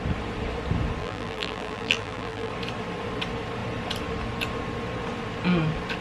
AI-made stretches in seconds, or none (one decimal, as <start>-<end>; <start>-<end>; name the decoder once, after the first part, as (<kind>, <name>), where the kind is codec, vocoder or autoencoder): 1.0-2.5 (vocoder, BigVGAN v2)